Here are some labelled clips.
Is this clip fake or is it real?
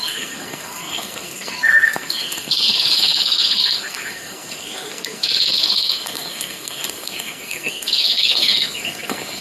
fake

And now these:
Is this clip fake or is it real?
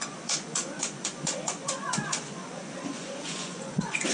fake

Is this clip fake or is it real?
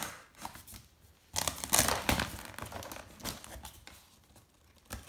real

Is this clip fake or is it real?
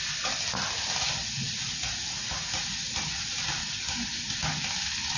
real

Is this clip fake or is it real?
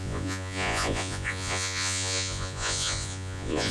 fake